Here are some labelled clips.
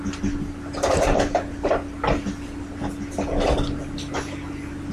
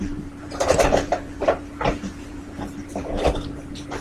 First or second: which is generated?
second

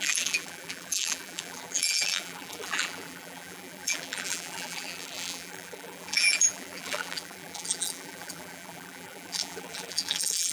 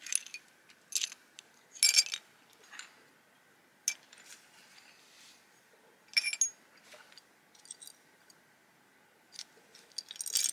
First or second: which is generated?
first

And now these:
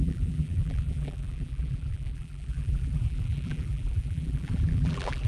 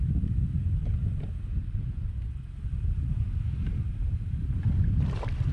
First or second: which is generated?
first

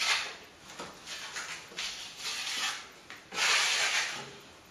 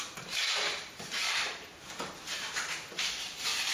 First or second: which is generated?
second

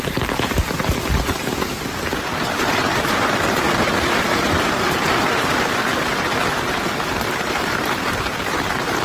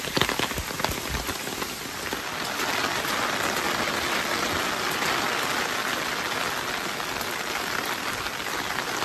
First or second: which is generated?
first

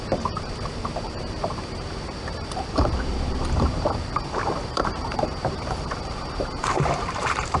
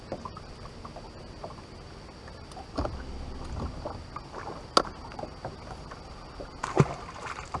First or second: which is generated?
first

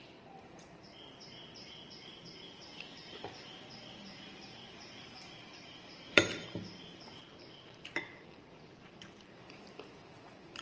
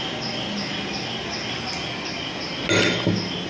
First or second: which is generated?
first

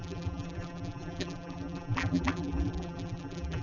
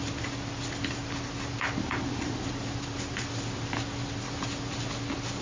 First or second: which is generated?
first